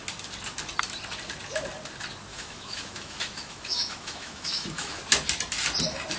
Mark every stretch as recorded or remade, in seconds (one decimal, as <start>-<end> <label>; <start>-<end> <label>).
0.0-2.3 recorded; 2.3-5.0 remade; 5.0-6.2 recorded